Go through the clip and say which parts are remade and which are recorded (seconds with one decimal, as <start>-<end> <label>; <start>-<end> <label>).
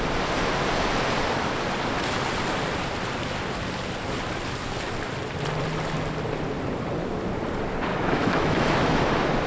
0.0-7.9 recorded; 7.9-9.0 remade; 9.0-9.5 recorded